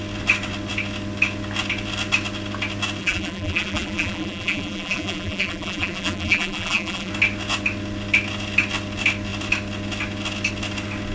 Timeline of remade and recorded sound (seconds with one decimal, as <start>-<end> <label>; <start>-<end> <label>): 0.0-3.0 recorded; 3.0-7.1 remade; 7.1-11.1 recorded